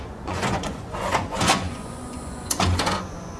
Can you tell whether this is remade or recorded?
remade